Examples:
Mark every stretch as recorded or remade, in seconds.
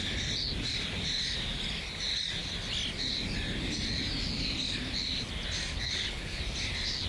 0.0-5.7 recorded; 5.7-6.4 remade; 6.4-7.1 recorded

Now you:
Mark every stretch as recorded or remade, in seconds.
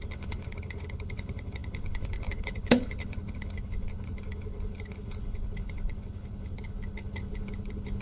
0.0-8.0 remade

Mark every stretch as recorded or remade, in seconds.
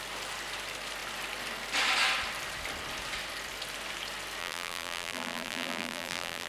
0.0-4.4 recorded; 4.4-6.5 remade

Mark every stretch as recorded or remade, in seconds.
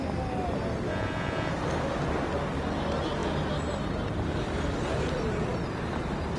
0.0-0.9 recorded; 0.9-1.5 remade; 1.5-6.4 recorded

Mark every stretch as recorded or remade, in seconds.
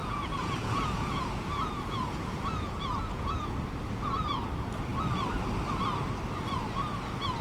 0.0-3.5 remade; 3.5-7.4 recorded